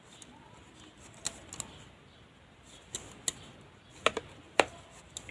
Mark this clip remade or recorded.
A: recorded